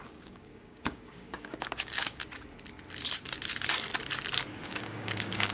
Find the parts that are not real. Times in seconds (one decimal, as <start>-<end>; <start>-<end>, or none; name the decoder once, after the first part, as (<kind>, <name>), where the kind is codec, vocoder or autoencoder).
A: 0.0-2.2 (codec, DAC); 4.6-5.5